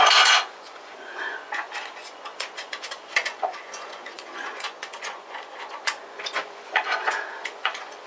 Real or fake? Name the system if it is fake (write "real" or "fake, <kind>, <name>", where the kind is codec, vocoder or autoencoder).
fake, vocoder, Vocos